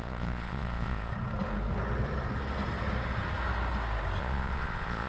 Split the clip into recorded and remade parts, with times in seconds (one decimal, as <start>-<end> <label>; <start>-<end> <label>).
0.0-1.1 remade; 1.1-4.2 recorded; 4.2-5.1 remade